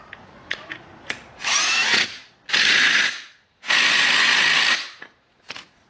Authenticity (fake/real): fake